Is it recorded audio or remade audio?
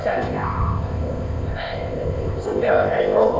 remade